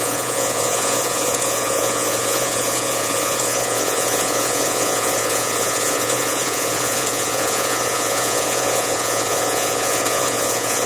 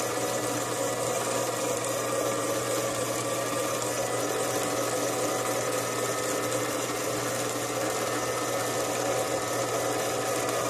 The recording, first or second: second